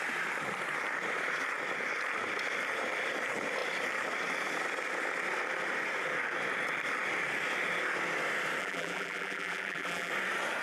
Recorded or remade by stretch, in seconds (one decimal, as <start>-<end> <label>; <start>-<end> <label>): 0.0-8.6 recorded; 8.6-10.1 remade; 10.1-10.6 recorded